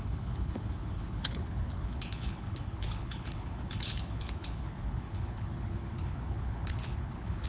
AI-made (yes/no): yes